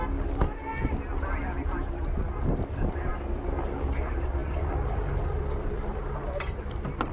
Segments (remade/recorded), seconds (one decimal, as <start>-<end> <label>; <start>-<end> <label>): 0.0-7.1 recorded